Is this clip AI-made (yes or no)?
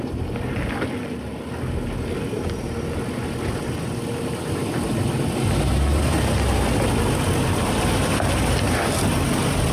no